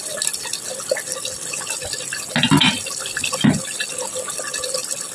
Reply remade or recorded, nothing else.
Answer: recorded